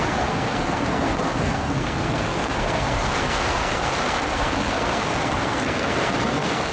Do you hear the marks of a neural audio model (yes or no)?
yes